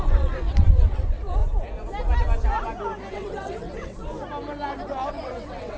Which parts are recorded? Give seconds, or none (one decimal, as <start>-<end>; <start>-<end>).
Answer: 1.4-3.1; 4.0-5.1